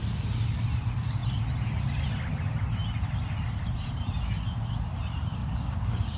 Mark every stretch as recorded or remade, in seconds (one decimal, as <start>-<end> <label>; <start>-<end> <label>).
0.0-5.4 recorded; 5.4-6.2 remade

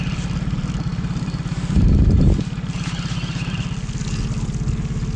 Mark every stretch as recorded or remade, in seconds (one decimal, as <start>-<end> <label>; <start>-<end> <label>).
0.0-5.2 recorded

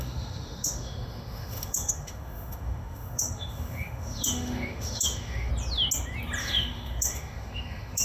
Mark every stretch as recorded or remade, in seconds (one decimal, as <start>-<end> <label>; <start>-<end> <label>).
0.0-5.5 remade; 5.5-6.4 recorded; 6.4-8.0 remade

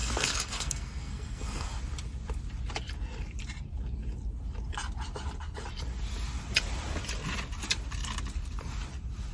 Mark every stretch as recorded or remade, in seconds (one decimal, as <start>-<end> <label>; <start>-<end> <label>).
0.0-1.8 remade; 1.8-9.3 recorded